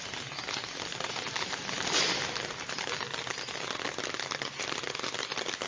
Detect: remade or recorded recorded